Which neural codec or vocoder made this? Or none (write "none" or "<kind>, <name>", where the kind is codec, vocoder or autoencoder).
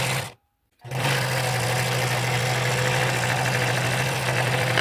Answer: none